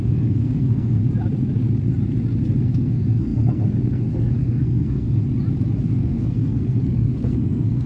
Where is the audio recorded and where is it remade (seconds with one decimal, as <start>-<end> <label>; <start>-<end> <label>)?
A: 0.0-1.0 remade; 1.0-2.6 recorded; 2.6-5.2 remade; 5.2-5.8 recorded; 5.8-7.9 remade